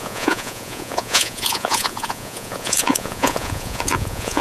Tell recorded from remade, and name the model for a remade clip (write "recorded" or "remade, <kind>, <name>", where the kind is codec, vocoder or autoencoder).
remade, vocoder, Vocos